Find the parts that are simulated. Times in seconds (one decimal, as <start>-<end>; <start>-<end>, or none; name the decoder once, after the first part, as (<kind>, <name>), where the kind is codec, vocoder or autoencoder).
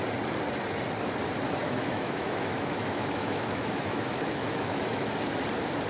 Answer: 1.6-5.1 (autoencoder, DAC-VAE)